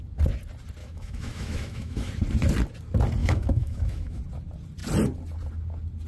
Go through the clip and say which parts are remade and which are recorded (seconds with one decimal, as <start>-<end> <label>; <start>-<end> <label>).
0.0-0.8 recorded; 0.8-2.1 remade; 2.1-3.2 recorded; 3.2-4.2 remade; 4.2-6.1 recorded